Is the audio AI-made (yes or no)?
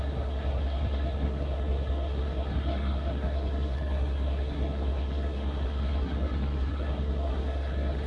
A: yes